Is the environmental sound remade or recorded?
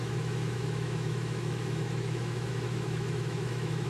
remade